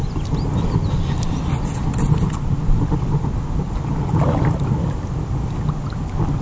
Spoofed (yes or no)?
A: no